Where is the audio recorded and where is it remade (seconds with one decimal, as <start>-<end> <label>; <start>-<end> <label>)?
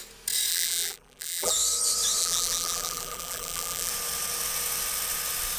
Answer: 0.0-0.5 recorded; 0.5-1.5 remade; 1.5-2.2 recorded; 2.2-3.9 remade; 3.9-5.6 recorded